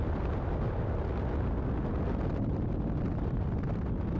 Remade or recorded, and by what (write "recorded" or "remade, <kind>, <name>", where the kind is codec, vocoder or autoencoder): recorded